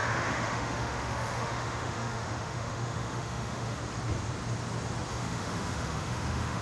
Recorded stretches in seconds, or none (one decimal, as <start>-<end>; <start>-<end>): 3.8-5.1